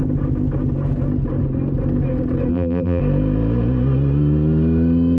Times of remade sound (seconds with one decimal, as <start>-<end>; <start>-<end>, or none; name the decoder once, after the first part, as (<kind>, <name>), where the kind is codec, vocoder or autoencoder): 2.5-3.0 (vocoder, BigVGAN v2)